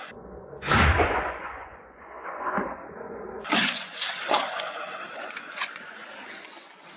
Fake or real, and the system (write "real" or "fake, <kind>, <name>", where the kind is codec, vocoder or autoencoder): fake, vocoder, Vocos